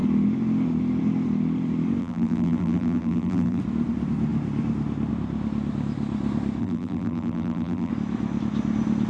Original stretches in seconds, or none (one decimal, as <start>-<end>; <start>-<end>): 0.0-2.0; 3.6-6.6; 7.9-9.1